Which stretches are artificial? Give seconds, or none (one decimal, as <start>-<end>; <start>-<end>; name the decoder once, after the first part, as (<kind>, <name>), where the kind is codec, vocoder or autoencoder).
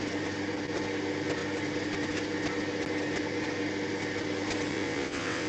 4.7-5.5 (vocoder, WaveNeXt)